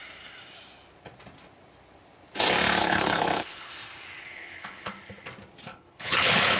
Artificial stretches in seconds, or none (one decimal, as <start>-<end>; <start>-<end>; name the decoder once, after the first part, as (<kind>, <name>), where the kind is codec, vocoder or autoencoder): 2.8-3.7 (codec, HILCodec); 4.3-4.9; 5.7-6.6